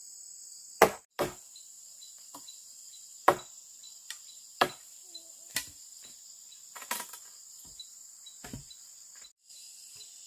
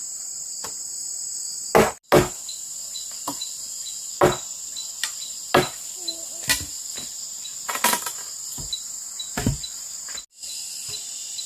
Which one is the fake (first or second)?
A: first